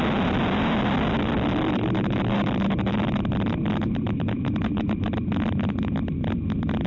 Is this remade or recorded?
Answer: recorded